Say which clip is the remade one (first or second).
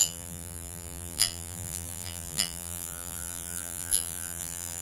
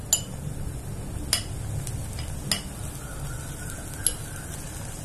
first